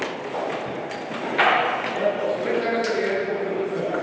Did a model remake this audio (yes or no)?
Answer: no